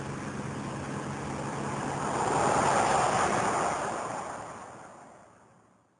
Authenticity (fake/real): real